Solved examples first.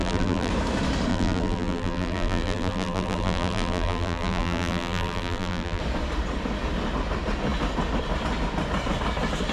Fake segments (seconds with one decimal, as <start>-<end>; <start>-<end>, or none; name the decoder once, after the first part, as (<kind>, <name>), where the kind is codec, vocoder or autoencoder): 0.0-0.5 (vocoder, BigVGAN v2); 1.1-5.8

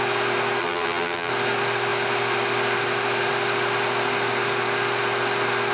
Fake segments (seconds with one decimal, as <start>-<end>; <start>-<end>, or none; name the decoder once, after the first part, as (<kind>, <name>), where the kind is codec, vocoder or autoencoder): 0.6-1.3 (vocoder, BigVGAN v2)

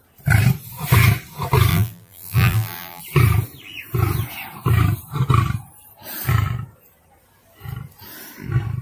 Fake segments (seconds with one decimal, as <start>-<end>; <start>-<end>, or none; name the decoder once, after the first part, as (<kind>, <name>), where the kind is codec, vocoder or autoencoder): 1.7-3.0 (vocoder, BigVGAN v2)